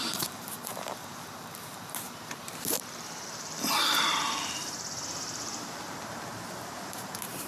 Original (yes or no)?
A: no